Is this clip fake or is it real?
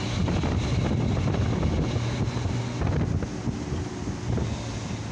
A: real